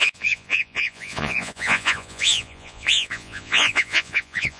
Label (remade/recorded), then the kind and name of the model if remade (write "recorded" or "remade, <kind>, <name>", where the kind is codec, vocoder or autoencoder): remade, vocoder, Vocos